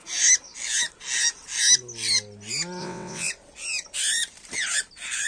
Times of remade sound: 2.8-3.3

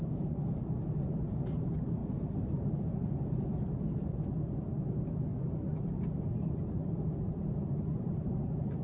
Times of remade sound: none

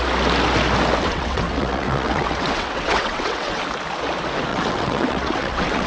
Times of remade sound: 1.0-3.6; 4.5-5.9

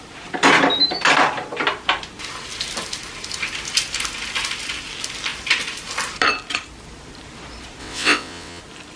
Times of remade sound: 7.8-8.6

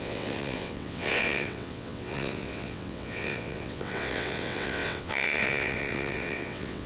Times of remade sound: 0.0-6.9

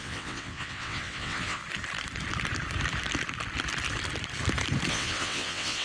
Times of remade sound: 0.0-1.6; 4.9-5.8

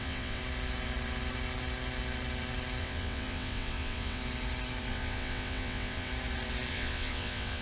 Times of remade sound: 0.0-0.4; 2.8-4.2; 4.9-6.1; 6.7-7.6